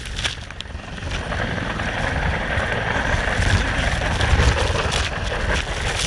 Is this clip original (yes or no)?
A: yes